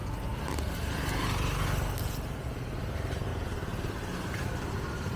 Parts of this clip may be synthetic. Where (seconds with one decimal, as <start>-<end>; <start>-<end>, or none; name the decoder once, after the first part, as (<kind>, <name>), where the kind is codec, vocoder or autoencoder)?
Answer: 3.3-4.0 (vocoder, BigVGAN v2)